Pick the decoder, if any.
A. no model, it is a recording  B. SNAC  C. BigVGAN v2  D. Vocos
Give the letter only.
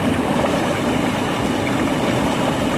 A